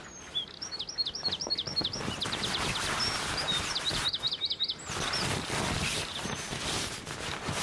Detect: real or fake fake